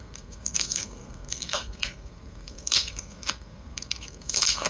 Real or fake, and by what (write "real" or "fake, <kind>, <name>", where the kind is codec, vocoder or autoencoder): fake, codec, SNAC